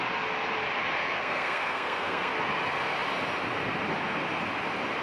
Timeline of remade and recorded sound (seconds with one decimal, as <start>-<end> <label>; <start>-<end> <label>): 0.0-1.0 recorded; 1.0-2.3 remade; 2.3-5.0 recorded